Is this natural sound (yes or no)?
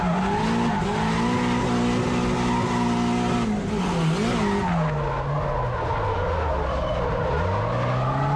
yes